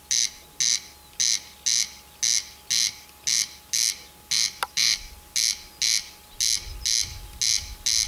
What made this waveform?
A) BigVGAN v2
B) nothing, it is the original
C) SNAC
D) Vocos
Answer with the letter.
B